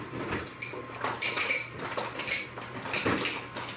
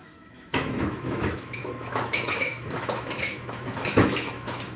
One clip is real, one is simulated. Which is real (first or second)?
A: first